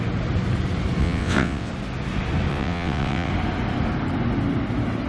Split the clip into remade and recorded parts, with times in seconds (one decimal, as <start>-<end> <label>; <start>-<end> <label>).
0.0-1.0 recorded; 1.0-1.7 remade; 1.7-2.5 recorded; 2.5-3.3 remade; 3.3-5.1 recorded